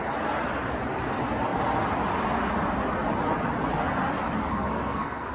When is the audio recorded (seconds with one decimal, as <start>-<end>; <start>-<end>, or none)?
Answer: 0.0-4.4